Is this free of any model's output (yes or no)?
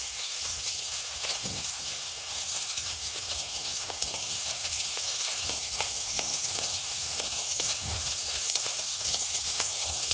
no